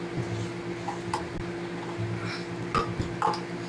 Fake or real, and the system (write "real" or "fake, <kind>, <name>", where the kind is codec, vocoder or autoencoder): real